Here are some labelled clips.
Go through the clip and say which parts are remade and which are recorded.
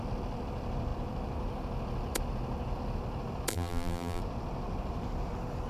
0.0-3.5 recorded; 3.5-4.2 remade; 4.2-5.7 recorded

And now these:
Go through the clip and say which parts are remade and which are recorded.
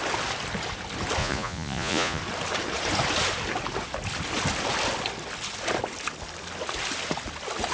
0.0-1.2 recorded; 1.2-2.2 remade; 2.2-7.7 recorded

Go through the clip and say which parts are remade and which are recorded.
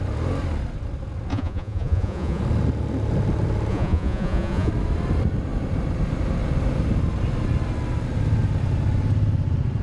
0.0-1.3 recorded; 1.3-2.4 remade; 2.4-3.7 recorded; 3.7-4.7 remade; 4.7-9.8 recorded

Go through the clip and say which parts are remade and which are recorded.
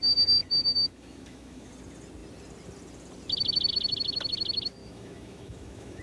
0.0-0.4 recorded; 0.4-1.7 remade; 1.7-4.8 recorded; 4.8-6.0 remade